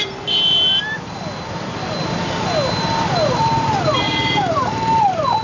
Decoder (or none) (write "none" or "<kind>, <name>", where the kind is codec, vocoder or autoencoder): none